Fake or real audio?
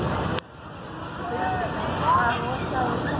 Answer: real